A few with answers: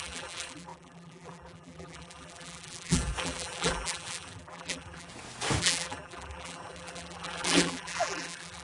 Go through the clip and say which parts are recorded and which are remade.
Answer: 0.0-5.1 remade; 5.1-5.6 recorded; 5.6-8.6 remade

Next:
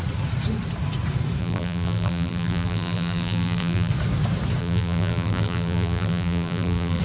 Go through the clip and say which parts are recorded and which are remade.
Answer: 0.0-1.4 recorded; 1.4-3.9 remade; 3.9-4.6 recorded; 4.6-7.0 remade

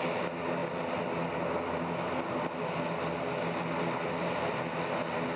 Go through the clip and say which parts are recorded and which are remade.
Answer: 0.0-5.4 recorded

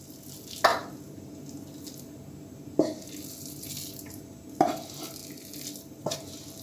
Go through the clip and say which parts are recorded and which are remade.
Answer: 0.0-6.6 recorded

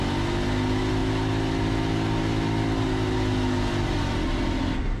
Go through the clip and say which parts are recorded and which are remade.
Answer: 0.0-5.0 recorded